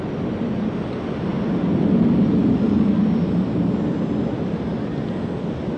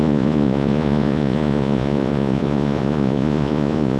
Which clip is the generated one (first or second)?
second